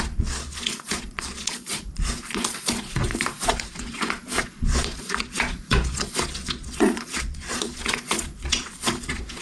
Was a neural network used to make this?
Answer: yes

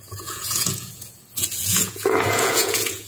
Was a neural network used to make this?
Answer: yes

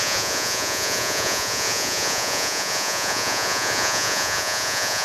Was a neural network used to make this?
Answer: yes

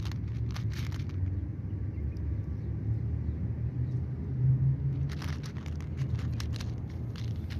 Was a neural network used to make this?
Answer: no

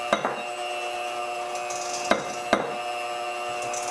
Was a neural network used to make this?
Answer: no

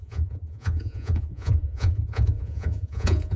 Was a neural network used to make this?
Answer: yes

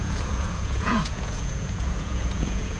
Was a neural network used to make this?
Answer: yes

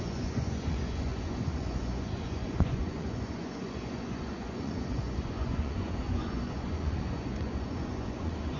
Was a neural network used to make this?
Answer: yes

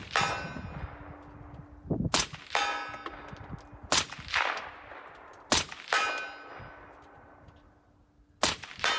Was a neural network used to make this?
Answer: no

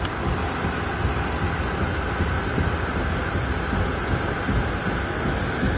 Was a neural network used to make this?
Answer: no